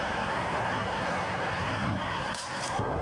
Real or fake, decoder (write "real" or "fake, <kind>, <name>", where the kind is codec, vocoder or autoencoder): fake, codec, SNAC